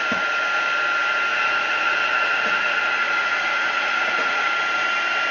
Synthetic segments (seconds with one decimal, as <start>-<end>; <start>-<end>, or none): 1.3-4.5